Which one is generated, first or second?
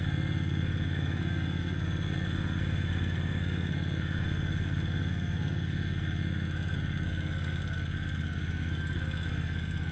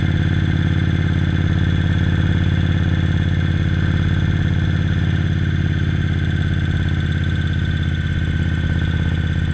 first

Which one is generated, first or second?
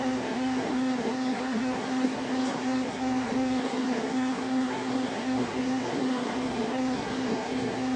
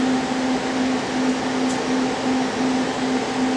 first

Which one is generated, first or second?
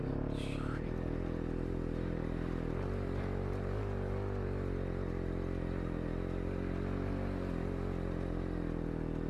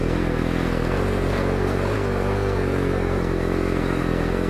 second